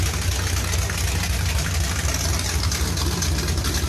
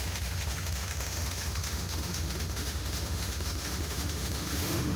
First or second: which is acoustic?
first